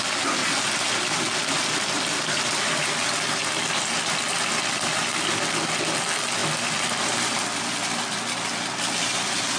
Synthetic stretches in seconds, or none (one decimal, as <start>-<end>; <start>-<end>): 0.4-2.8